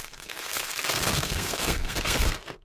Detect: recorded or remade remade